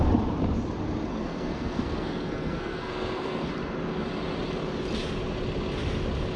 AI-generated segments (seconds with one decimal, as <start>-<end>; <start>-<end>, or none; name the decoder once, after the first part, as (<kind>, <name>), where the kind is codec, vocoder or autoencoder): 1.1-3.5 (codec, SNAC)